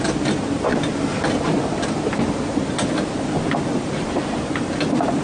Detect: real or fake real